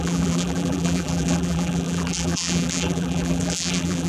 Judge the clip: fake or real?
fake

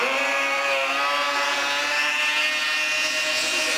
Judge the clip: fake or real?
real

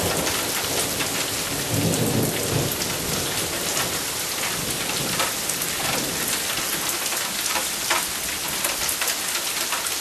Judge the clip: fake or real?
real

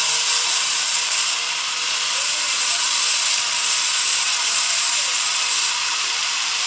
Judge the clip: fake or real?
fake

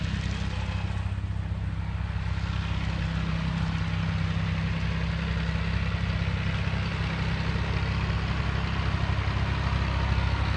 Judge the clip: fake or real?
real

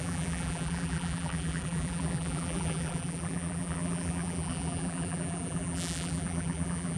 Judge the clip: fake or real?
fake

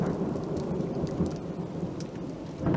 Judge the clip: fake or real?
fake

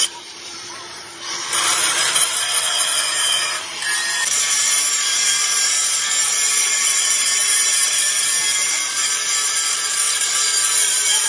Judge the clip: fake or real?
fake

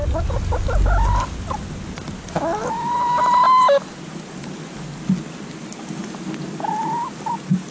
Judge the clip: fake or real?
real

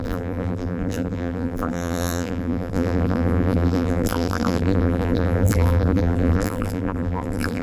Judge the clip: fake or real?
fake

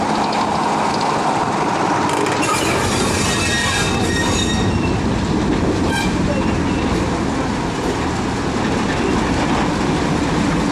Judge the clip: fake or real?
real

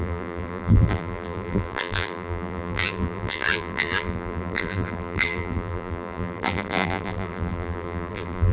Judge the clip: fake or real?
fake